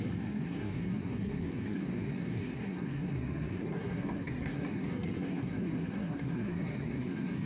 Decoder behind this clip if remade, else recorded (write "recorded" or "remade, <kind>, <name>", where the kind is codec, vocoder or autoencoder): remade, codec, SNAC